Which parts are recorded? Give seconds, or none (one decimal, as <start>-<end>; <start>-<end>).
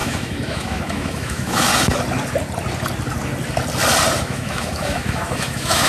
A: 1.7-4.2